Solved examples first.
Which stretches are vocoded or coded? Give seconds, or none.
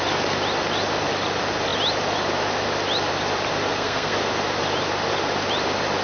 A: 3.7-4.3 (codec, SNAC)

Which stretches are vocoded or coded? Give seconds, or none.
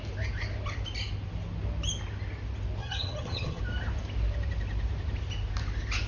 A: 2.8-3.6 (vocoder, HiFi-GAN)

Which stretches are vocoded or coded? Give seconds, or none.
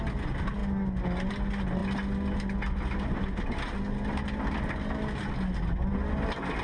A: none